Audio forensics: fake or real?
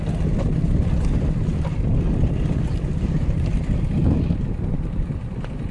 fake